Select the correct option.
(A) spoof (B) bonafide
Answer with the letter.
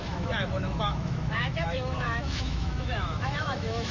A